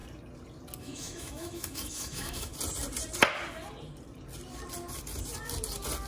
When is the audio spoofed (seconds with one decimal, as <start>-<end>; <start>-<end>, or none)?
0.8-2.5